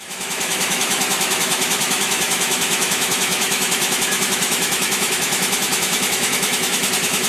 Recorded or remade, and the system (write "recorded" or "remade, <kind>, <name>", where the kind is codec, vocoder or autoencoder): remade, autoencoder, DAC-VAE